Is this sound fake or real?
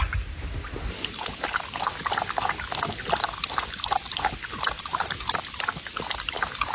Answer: real